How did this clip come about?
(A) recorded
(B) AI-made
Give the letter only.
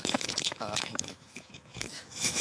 B